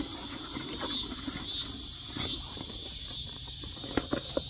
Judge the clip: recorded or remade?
recorded